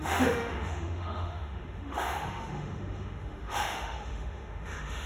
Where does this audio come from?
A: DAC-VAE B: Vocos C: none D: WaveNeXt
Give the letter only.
A